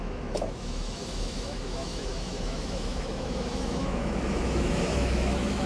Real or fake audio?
fake